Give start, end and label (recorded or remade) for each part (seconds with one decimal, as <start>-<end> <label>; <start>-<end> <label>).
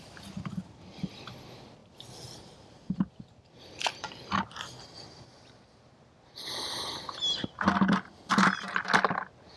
0.0-9.6 recorded